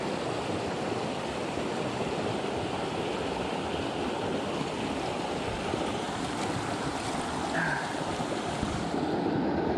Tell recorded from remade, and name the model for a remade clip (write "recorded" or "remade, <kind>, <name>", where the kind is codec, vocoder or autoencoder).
recorded